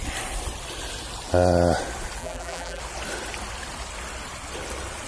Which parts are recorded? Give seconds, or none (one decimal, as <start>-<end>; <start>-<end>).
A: 0.0-2.2; 2.8-5.1